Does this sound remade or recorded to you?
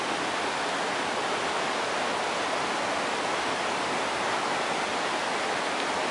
recorded